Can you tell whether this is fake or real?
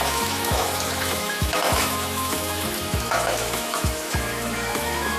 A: fake